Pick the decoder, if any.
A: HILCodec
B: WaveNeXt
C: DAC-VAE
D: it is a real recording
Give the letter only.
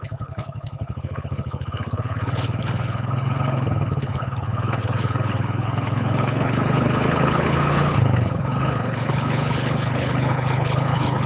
A